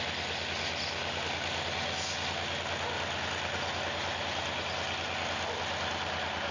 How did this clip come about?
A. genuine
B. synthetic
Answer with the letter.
A